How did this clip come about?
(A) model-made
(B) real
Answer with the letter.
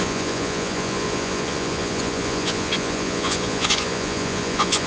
A